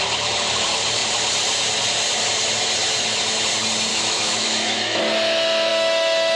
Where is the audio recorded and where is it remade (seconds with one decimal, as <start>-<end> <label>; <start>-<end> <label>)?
0.0-3.9 recorded; 3.9-5.0 remade; 5.0-5.7 recorded; 5.7-6.4 remade